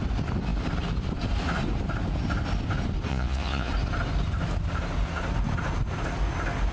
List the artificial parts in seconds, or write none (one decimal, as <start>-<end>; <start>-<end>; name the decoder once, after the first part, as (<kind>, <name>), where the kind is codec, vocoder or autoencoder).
3.1-3.7 (vocoder, Vocos)